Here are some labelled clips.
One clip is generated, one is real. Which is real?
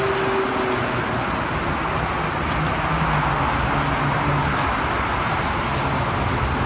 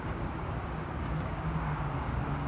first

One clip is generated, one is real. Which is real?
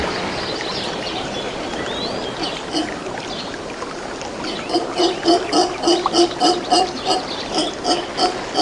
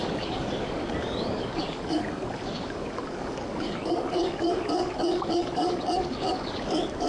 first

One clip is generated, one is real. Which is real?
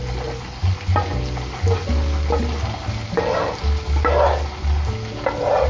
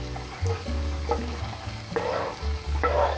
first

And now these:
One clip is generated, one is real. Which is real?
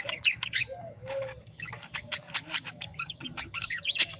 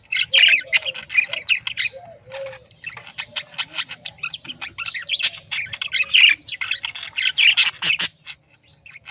second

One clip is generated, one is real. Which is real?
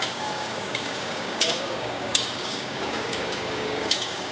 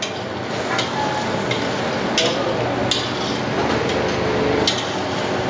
second